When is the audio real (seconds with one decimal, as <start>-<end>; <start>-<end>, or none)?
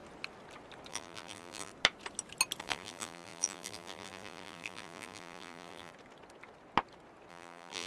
0.0-0.9; 1.7-2.6; 5.9-7.3